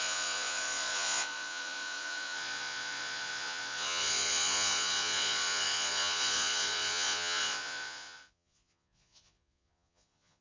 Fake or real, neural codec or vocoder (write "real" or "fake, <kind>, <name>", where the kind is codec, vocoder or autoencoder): fake, vocoder, Vocos